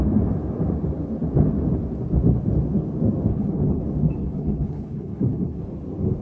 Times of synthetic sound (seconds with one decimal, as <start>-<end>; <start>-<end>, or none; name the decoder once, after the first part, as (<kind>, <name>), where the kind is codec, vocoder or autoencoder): 3.3-3.8 (codec, HILCodec); 4.2-5.6